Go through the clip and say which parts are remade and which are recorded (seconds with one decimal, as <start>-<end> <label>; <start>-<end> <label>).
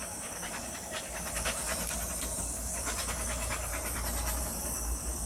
0.0-1.7 remade; 1.7-2.4 recorded; 2.4-3.7 remade; 3.7-4.4 recorded; 4.4-5.3 remade